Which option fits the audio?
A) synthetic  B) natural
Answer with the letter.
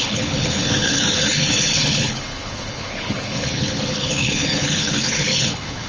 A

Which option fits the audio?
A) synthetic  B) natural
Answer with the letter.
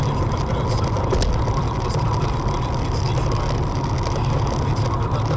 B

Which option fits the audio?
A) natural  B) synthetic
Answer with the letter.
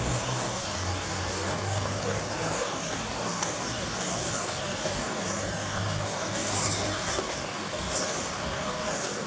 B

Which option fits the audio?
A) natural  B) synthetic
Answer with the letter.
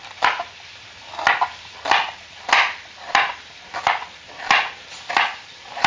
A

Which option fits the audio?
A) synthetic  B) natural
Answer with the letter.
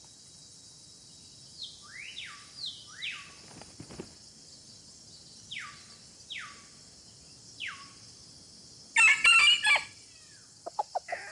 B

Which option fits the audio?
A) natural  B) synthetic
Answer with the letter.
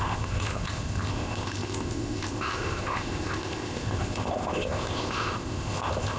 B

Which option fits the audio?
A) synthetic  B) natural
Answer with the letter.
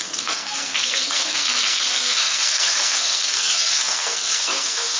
A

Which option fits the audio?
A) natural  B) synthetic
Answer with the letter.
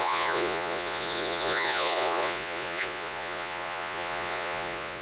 B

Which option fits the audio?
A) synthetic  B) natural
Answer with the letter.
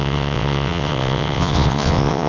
A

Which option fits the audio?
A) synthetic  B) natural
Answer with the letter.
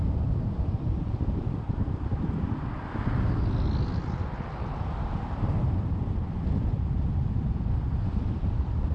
B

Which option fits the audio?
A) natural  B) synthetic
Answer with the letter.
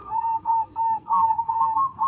B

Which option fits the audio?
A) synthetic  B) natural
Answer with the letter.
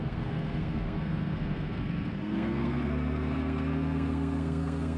A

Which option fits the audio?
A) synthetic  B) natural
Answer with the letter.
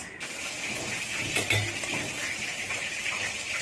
A